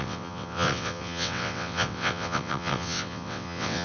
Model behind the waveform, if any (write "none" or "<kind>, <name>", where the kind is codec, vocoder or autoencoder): vocoder, WaveNeXt